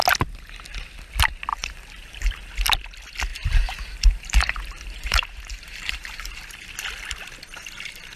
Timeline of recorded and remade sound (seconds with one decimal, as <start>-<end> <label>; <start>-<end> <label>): 0.0-1.5 recorded; 1.5-2.5 remade; 2.5-3.3 recorded; 3.3-6.3 remade; 6.3-8.2 recorded